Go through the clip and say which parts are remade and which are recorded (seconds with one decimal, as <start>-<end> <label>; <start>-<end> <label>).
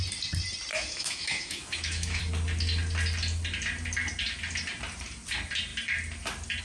0.0-0.7 recorded; 0.7-2.2 remade; 2.2-6.6 recorded